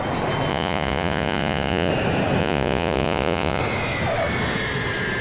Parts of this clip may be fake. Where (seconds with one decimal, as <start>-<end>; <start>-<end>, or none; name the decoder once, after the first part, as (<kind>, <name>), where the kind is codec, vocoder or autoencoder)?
0.5-1.9 (vocoder, Vocos); 2.4-3.6